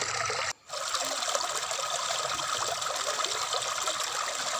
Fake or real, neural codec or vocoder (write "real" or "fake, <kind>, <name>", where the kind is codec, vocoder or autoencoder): real